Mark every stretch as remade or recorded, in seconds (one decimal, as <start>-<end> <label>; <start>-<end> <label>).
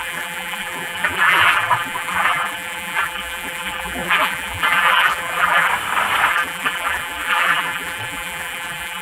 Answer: 0.0-5.7 remade; 5.7-6.3 recorded; 6.3-9.0 remade